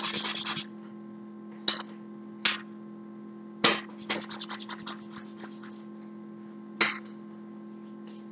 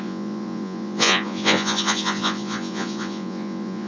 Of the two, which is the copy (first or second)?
second